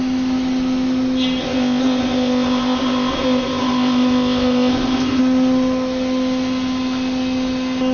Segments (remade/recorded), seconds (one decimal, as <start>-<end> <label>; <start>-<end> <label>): 0.0-1.4 recorded; 1.4-5.2 remade; 5.2-7.9 recorded